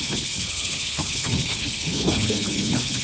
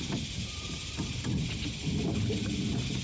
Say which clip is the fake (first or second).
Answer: first